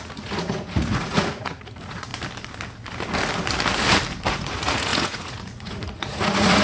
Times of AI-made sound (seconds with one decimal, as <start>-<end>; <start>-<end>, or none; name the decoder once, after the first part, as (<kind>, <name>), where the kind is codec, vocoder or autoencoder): 0.0-2.1 (vocoder, Vocos); 4.3-6.6

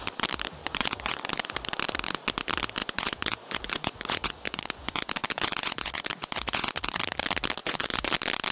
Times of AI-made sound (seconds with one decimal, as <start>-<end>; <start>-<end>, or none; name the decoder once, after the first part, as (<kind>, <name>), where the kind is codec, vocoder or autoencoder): 0.6-1.2 (vocoder, Vocos); 2.8-7.0; 7.6-8.1

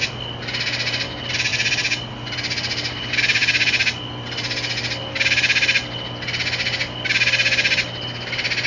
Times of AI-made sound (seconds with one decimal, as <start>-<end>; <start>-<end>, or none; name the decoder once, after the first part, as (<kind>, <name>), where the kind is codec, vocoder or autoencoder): none

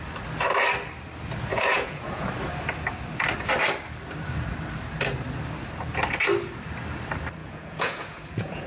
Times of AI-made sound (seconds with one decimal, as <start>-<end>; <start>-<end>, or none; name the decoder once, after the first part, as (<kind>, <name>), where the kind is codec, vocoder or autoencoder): 1.5-2.3 (vocoder, Vocos); 7.4-8.7

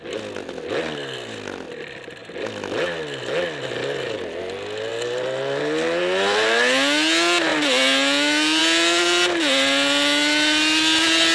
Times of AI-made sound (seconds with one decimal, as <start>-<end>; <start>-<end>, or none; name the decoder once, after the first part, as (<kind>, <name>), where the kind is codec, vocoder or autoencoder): none

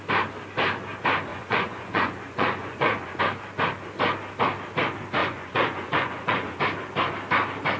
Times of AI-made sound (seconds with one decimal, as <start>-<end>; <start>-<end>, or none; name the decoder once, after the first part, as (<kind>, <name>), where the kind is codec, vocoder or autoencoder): 1.3-3.2 (vocoder, Vocos); 5.2-6.6

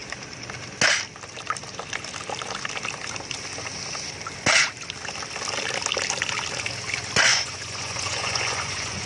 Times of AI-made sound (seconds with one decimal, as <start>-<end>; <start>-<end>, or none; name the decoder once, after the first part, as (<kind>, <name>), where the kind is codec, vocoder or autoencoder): 7.3-9.1 (vocoder, Vocos)